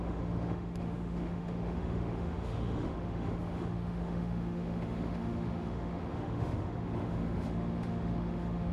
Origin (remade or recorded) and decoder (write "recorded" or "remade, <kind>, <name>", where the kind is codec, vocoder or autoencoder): remade, autoencoder, DAC-VAE